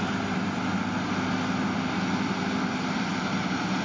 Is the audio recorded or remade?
recorded